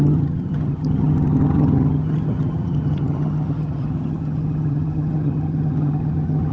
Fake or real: fake